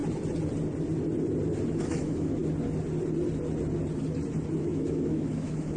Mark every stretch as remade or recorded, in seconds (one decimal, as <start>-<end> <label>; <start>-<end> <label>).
0.0-1.7 recorded; 1.7-2.4 remade; 2.4-4.6 recorded; 4.6-5.8 remade